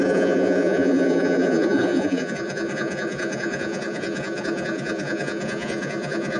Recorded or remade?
remade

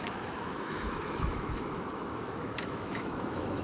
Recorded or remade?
remade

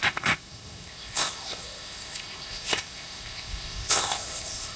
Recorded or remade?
remade